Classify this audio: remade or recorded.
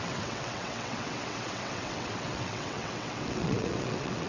remade